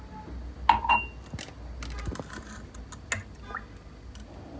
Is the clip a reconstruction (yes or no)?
no